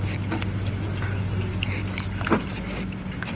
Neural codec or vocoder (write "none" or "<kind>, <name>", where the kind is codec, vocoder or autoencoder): none